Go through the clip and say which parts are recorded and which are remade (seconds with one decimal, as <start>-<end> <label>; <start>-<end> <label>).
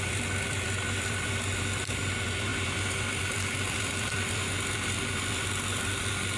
0.0-6.4 remade